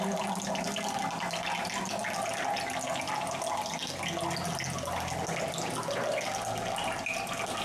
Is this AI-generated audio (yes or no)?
no